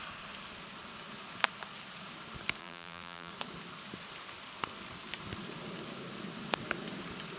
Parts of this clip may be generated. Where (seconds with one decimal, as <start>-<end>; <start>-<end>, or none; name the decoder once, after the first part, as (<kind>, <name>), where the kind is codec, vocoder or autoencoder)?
2.6-3.3 (vocoder, BigVGAN v2)